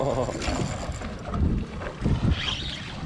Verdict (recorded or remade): recorded